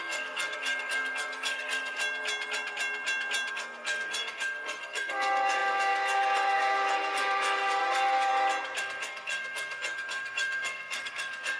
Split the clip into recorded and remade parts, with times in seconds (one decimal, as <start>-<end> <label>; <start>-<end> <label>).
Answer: 0.0-2.0 remade; 2.0-3.5 recorded; 3.5-8.3 remade; 8.3-8.8 recorded; 8.8-11.6 remade